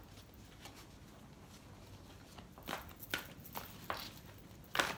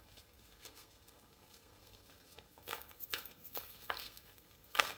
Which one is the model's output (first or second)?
second